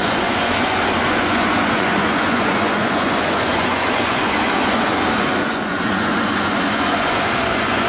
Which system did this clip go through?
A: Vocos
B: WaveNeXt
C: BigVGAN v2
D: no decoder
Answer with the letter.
A